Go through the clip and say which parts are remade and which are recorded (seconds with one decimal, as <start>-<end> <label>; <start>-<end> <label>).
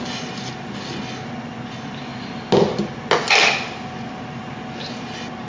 0.0-5.5 recorded